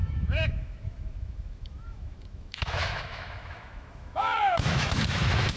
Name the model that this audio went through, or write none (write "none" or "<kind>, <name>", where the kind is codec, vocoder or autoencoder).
autoencoder, DAC-VAE